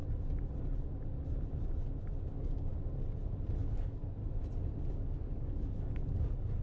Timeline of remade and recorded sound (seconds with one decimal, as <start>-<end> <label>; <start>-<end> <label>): 0.0-2.3 recorded; 2.3-2.7 remade; 2.7-3.6 recorded; 3.6-4.2 remade; 4.2-4.9 recorded; 4.9-6.6 remade